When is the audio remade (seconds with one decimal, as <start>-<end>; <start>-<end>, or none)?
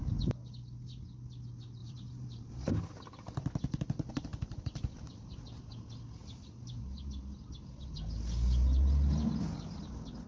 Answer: 1.8-2.7; 6.2-7.2